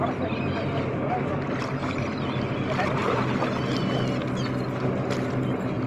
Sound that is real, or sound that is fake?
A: real